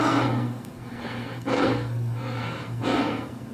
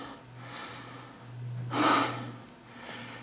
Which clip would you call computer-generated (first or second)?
first